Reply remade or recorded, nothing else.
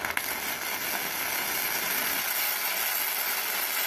recorded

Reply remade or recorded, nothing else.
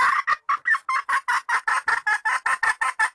recorded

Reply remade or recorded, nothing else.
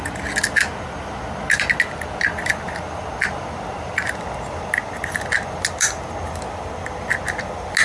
recorded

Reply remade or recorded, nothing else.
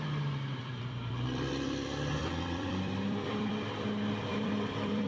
remade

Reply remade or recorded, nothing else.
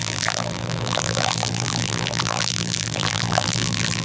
remade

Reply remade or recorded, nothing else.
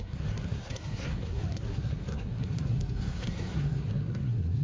remade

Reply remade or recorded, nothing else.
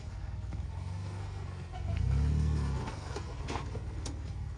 remade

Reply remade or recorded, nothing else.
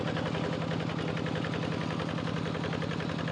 recorded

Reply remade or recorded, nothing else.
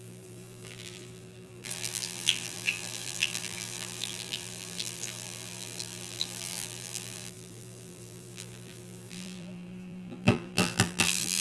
remade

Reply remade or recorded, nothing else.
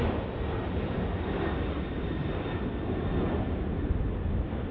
recorded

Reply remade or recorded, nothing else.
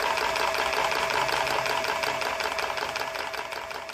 recorded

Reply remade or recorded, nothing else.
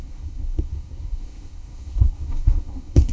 remade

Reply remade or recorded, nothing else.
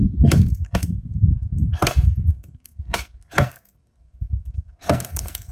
remade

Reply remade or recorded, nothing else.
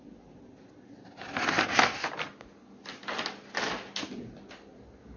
recorded